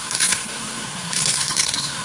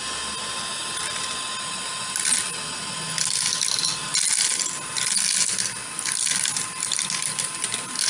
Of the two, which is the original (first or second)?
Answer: second